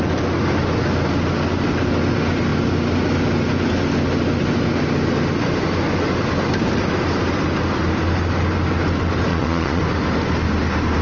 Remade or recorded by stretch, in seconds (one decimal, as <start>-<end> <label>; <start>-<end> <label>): 0.0-9.3 recorded; 9.3-9.8 remade; 9.8-11.0 recorded